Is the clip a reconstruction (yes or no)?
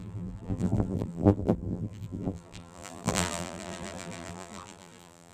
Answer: yes